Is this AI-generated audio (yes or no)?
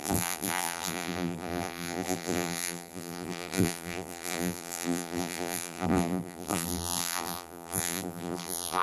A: yes